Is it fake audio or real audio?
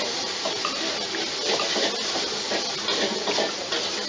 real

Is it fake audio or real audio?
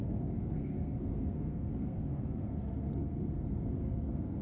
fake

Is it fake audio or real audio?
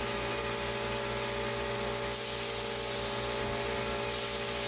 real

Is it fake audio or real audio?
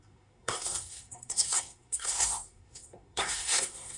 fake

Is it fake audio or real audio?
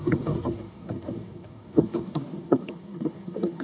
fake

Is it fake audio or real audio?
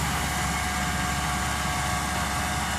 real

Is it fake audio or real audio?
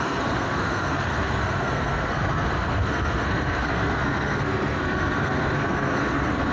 fake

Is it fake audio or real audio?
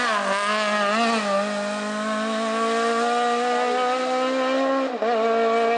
real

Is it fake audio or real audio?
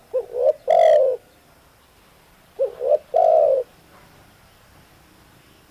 real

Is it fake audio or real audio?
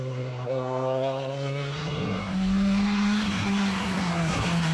fake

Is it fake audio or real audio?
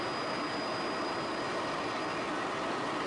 real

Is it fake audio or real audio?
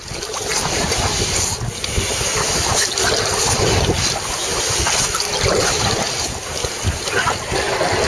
real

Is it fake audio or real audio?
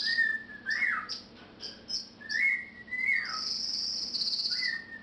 real